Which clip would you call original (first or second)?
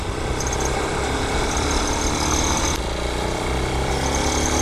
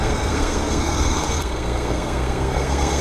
first